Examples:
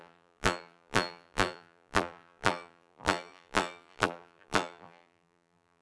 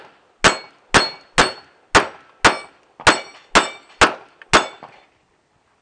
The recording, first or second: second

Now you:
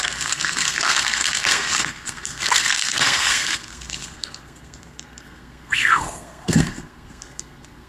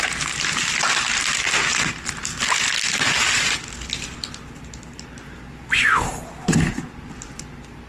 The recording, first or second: second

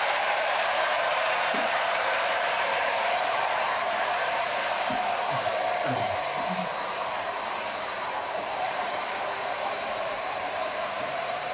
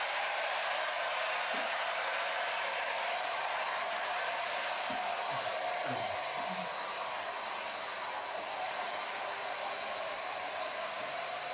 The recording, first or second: second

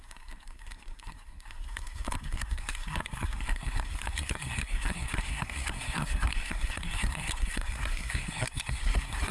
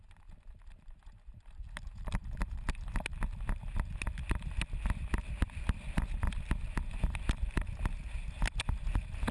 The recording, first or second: second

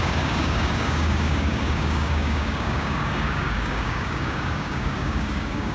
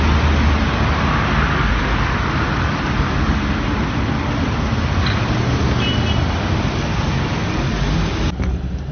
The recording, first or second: second